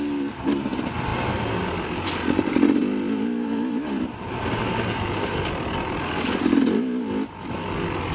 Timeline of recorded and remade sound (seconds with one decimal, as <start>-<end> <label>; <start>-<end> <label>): 0.0-8.1 recorded